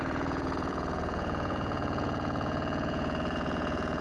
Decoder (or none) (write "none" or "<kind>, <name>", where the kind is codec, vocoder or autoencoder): vocoder, Vocos